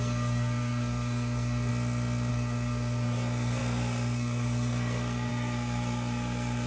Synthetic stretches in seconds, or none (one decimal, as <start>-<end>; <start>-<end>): 0.0-1.7; 2.3-6.7